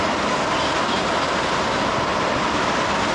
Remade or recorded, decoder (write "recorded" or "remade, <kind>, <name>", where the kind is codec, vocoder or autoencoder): recorded